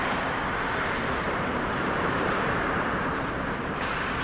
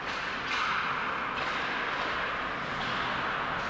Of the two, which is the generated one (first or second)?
first